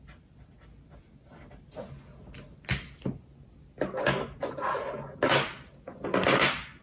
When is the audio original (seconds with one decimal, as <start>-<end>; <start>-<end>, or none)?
0.0-6.8